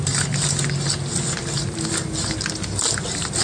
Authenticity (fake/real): real